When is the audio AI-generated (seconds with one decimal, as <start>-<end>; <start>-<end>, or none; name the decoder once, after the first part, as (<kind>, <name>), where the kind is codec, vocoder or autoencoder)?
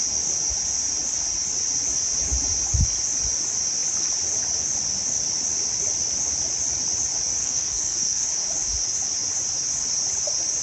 7.4-8.3 (codec, SNAC)